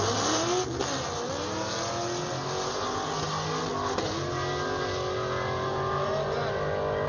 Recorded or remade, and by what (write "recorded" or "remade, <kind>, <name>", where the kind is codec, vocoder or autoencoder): recorded